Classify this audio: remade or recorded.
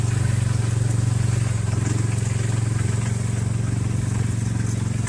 recorded